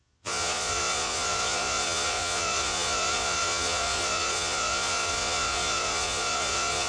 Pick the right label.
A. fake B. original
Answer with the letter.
A